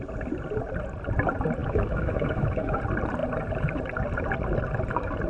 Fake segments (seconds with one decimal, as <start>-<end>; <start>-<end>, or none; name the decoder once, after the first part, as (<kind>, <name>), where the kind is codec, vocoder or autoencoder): 1.6-2.8 (autoencoder, DAC-VAE)